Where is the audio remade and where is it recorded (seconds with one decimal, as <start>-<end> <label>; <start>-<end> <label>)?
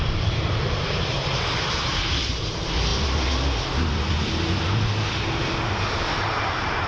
0.0-2.9 remade; 2.9-6.1 recorded; 6.1-6.9 remade